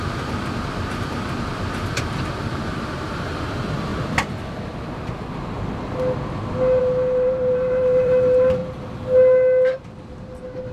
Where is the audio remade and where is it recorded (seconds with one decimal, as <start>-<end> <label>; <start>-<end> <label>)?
0.0-3.9 remade; 3.9-6.8 recorded; 6.8-8.6 remade; 8.6-10.1 recorded; 10.1-10.7 remade